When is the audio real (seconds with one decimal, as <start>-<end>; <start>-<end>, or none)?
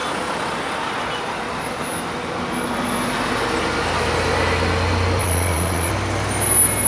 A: 0.0-5.2; 5.9-6.9